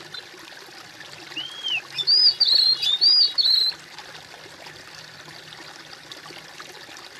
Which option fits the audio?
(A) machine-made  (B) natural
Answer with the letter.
B